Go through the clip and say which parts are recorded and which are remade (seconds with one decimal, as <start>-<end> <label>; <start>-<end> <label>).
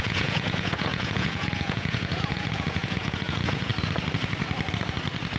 0.0-3.7 remade; 3.7-5.4 recorded